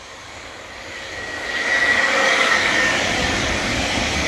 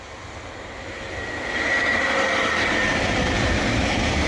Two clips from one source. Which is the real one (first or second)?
second